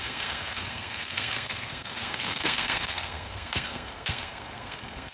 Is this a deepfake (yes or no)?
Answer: yes